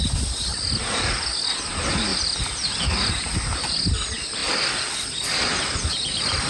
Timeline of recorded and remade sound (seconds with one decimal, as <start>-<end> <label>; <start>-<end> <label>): 0.0-6.5 recorded